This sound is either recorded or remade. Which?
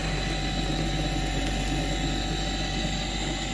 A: recorded